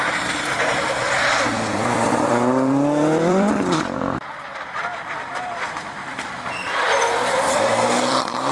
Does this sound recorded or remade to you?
remade